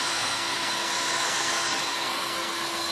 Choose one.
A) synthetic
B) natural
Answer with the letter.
A